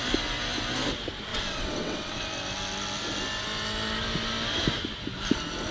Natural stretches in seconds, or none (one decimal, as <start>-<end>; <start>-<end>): 0.0-1.3; 2.2-5.7